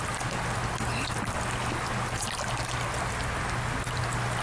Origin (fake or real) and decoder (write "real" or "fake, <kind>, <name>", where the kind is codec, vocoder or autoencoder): real